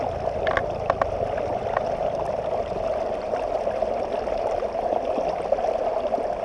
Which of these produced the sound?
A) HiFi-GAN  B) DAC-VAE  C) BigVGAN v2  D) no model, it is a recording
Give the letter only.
D